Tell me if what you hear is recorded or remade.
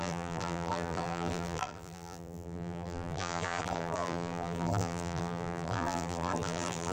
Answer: remade